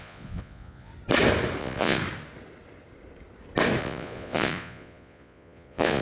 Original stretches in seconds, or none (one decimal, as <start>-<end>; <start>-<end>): 0.9-1.6; 2.0-3.8